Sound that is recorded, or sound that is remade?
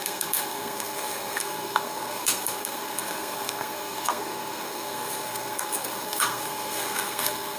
remade